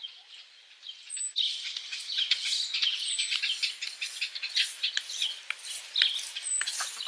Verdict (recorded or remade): recorded